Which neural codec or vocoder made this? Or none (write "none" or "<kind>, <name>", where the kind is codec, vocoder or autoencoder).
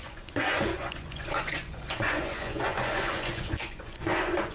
vocoder, Vocos